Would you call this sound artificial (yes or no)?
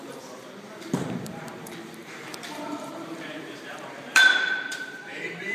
yes